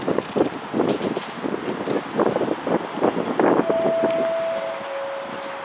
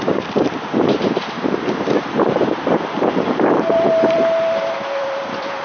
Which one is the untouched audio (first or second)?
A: first